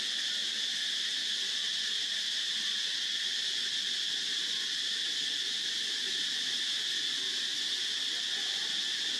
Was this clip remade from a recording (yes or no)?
no